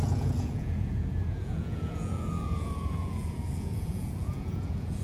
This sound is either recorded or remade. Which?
remade